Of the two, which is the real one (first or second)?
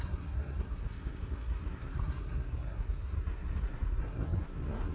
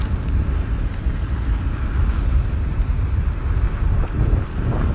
second